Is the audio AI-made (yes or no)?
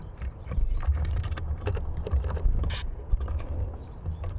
yes